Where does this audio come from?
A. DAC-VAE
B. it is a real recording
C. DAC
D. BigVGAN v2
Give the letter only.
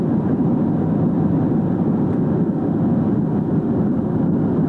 B